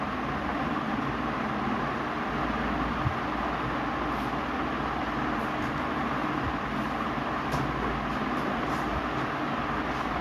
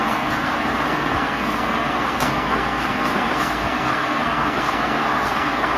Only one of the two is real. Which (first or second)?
first